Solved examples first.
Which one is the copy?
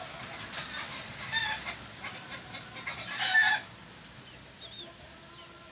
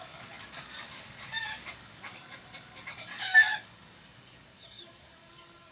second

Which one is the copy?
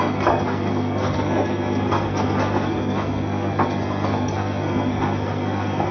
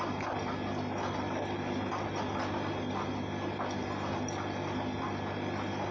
first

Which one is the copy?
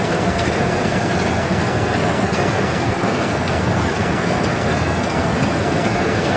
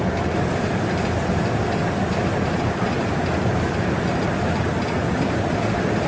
first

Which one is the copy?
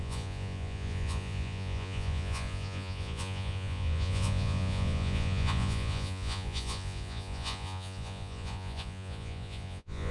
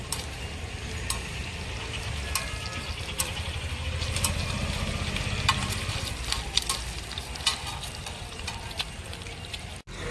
first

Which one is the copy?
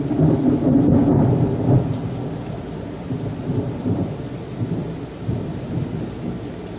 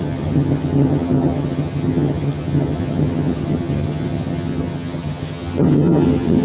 second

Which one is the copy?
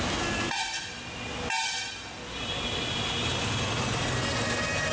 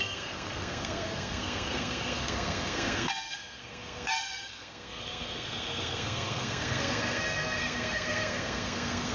second